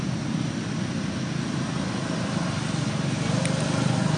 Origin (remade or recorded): recorded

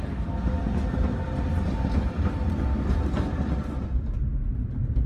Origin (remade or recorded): recorded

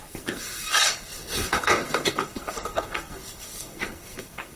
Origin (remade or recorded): remade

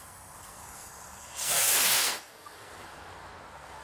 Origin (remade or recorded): remade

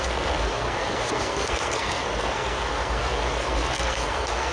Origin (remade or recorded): remade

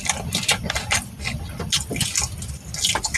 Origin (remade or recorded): recorded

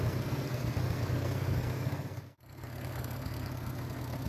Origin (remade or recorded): remade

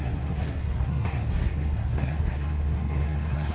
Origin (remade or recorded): remade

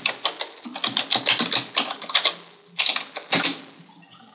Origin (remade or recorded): recorded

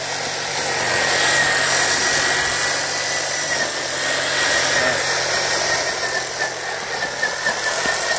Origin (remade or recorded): recorded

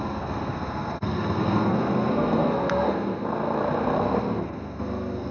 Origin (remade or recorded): remade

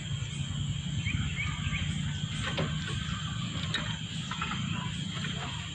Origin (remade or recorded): recorded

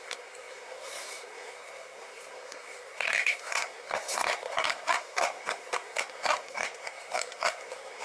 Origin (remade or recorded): remade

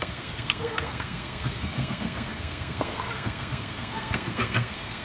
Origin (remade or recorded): remade